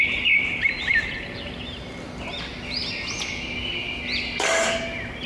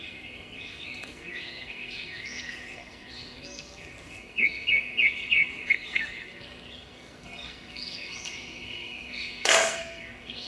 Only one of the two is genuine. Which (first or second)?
first